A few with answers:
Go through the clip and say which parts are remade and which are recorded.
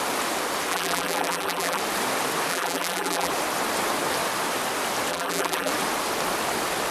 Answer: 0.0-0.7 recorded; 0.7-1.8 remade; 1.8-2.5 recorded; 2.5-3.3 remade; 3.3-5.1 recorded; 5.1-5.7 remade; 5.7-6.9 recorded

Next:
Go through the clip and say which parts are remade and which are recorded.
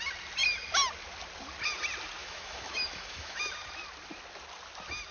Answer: 0.0-2.2 recorded; 2.2-3.5 remade; 3.5-5.1 recorded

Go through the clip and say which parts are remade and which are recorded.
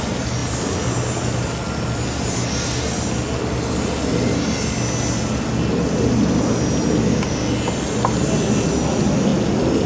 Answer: 0.0-9.9 recorded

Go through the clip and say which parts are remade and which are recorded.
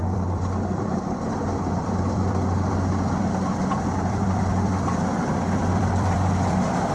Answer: 0.0-6.9 remade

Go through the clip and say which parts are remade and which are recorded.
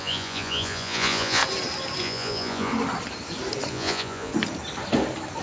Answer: 0.0-1.4 remade; 1.4-2.0 recorded; 2.0-2.7 remade; 2.7-3.7 recorded; 3.7-4.3 remade; 4.3-5.4 recorded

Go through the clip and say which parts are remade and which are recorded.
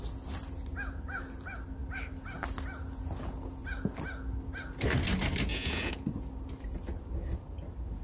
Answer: 0.0-5.5 recorded; 5.5-6.3 remade; 6.3-8.0 recorded